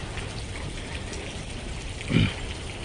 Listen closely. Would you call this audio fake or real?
real